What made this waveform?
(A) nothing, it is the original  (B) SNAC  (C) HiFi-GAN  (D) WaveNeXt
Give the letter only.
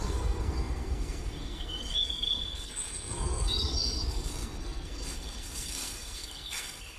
B